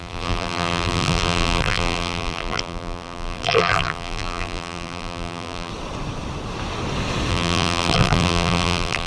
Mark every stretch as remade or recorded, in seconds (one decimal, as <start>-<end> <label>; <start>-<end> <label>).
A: 0.0-5.7 remade; 5.7-7.3 recorded; 7.3-9.1 remade